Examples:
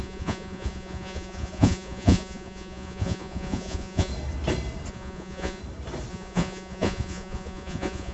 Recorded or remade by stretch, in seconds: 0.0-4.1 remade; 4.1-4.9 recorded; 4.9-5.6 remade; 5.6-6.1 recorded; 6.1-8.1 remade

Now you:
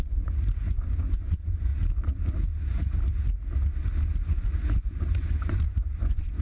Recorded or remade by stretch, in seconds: 0.0-1.7 remade; 1.7-4.2 recorded; 4.2-6.4 remade

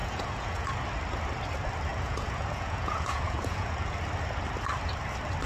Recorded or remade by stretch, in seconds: 0.0-0.7 remade; 0.7-1.9 recorded; 1.9-4.0 remade; 4.0-5.5 recorded